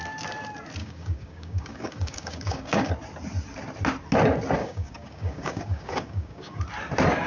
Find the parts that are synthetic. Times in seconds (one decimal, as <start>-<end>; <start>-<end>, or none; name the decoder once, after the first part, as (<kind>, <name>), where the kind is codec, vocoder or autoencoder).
0.8-2.9 (codec, DAC); 4.6-6.6